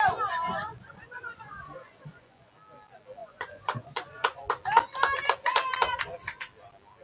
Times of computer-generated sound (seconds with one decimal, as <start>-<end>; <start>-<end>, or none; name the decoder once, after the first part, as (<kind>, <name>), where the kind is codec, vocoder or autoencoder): 0.6-2.5 (vocoder, Vocos); 3.2-4.4